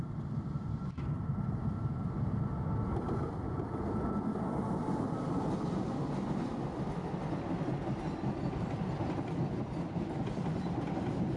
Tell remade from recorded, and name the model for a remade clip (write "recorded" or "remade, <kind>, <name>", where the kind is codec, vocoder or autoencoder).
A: recorded